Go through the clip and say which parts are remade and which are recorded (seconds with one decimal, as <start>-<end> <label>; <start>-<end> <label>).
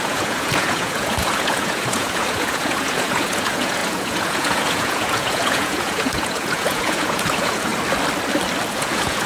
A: 0.0-7.7 remade; 7.7-8.7 recorded; 8.7-9.3 remade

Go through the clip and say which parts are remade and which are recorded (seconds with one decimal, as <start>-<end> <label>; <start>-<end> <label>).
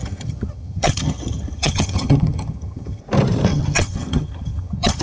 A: 0.0-3.0 remade; 3.0-3.5 recorded; 3.5-5.0 remade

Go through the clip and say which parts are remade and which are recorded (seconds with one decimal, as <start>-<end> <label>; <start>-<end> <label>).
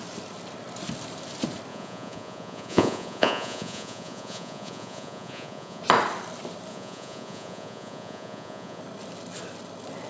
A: 0.0-1.7 recorded; 1.7-5.8 remade; 5.8-6.7 recorded; 6.7-8.8 remade; 8.8-10.1 recorded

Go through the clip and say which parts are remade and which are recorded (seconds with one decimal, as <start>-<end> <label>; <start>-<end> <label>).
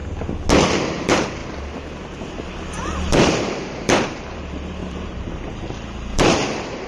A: 0.0-0.8 recorded; 0.8-1.4 remade; 1.4-2.3 recorded; 2.3-6.9 remade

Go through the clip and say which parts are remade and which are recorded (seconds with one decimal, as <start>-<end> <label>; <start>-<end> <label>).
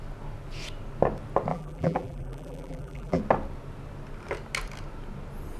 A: 0.0-1.5 recorded; 1.5-3.2 remade; 3.2-5.6 recorded